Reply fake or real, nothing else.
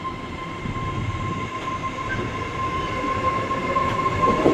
fake